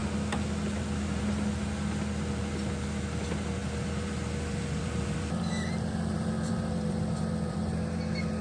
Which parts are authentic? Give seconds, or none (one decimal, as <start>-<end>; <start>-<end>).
0.0-3.6; 7.6-8.4